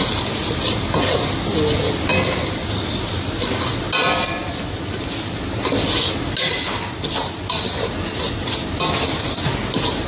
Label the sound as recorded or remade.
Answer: recorded